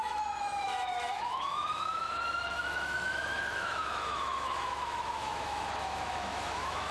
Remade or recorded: remade